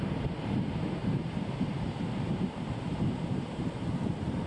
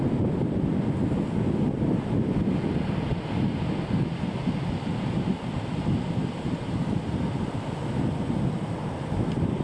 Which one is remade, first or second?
first